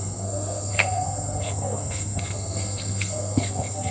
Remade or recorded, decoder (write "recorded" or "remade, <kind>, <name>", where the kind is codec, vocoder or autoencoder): remade, codec, SNAC